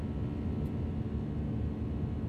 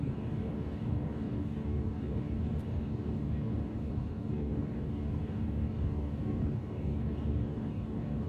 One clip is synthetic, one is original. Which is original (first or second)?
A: first